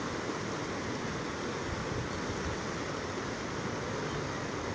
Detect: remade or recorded recorded